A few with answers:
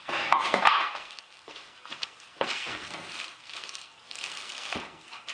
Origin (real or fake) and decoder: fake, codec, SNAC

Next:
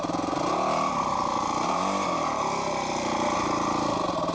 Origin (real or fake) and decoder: real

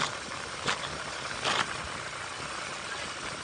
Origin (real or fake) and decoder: real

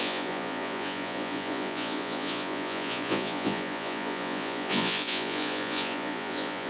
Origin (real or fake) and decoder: fake, vocoder, Vocos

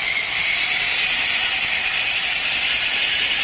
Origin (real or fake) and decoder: real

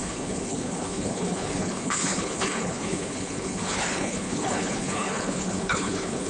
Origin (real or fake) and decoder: fake, codec, HILCodec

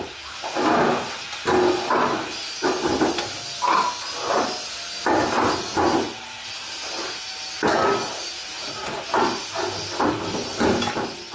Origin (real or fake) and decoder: real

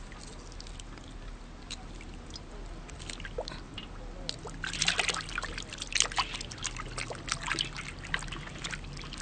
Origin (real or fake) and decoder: real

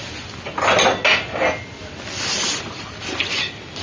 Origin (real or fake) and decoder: real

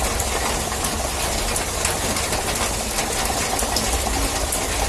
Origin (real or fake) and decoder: real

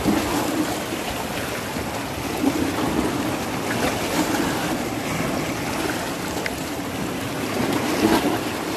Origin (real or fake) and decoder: real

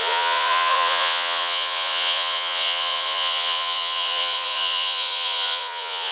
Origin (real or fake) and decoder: fake, vocoder, Vocos